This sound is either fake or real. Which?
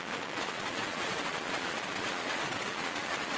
fake